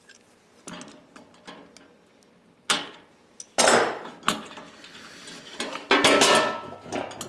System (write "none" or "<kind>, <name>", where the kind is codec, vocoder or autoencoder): none